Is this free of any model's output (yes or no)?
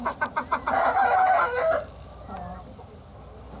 yes